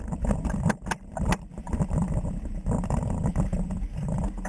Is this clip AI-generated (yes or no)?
no